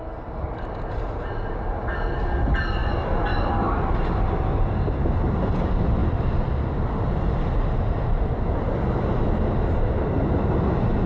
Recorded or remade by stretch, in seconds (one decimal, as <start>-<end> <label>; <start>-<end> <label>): 0.0-11.1 recorded